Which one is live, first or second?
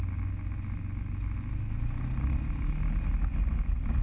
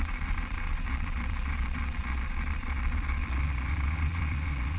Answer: first